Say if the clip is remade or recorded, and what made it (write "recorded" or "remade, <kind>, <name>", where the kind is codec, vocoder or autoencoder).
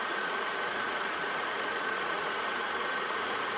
remade, vocoder, Vocos